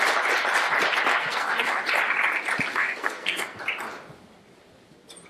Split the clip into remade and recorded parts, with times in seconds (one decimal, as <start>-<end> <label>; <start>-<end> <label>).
0.0-1.1 recorded; 1.1-1.8 remade; 1.8-2.7 recorded; 2.7-3.6 remade; 3.6-5.3 recorded